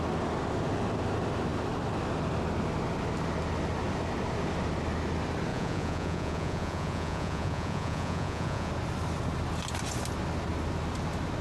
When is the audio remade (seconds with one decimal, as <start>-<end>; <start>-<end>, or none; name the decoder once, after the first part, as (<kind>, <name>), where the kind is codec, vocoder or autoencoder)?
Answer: 5.5-8.7 (vocoder, Vocos)